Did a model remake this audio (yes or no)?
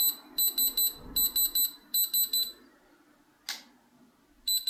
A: no